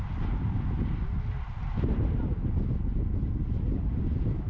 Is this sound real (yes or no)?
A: yes